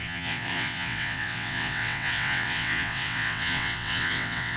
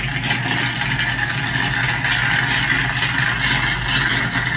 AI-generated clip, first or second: first